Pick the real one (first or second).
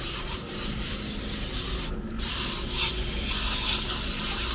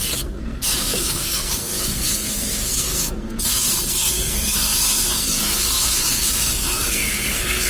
first